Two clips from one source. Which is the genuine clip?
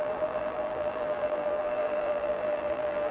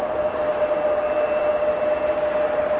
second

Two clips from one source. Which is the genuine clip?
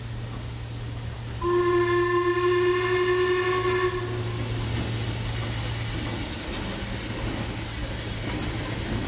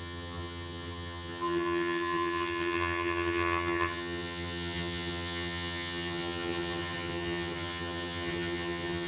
first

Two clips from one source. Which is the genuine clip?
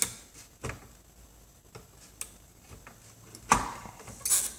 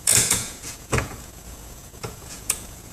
first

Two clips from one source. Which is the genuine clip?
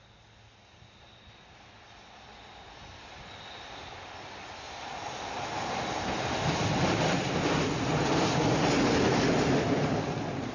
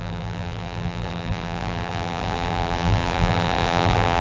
first